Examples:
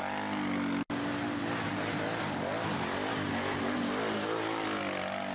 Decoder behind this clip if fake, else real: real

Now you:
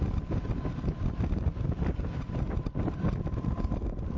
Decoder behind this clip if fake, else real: fake, vocoder, BigVGAN v2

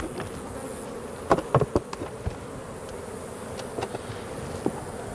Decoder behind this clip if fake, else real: real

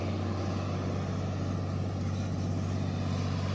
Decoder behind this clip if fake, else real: real